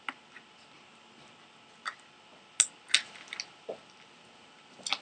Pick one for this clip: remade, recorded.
recorded